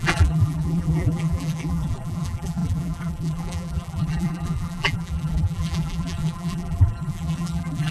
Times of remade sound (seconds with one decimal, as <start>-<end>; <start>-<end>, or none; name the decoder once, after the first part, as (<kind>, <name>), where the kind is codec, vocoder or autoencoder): 0.0-7.9 (vocoder, BigVGAN v2)